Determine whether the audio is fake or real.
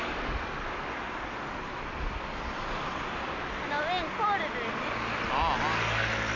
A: real